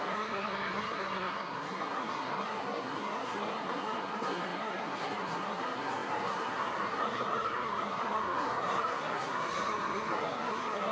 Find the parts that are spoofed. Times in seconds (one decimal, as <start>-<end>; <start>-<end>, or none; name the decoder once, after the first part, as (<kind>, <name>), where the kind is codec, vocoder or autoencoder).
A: 0.0-10.9 (codec, SNAC)